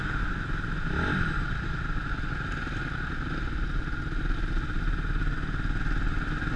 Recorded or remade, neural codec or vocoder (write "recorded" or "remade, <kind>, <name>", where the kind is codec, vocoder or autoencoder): recorded